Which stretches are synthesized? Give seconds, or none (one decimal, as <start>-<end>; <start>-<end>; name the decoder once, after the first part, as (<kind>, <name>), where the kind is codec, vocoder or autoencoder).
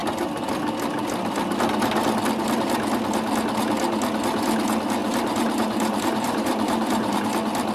5.0-7.2 (vocoder, BigVGAN v2)